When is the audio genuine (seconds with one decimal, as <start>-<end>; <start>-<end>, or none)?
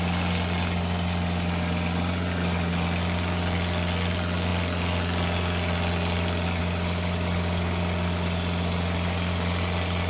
0.0-10.1